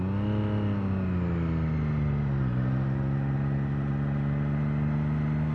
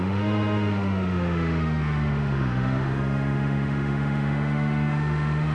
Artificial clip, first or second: second